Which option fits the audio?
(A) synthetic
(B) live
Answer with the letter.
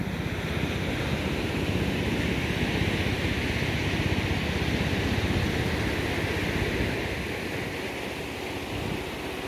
B